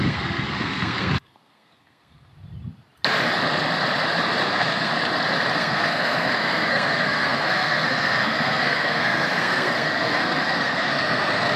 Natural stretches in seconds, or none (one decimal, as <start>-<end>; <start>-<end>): 2.3-4.5; 4.9-5.5